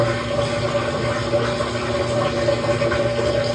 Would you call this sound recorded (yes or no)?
yes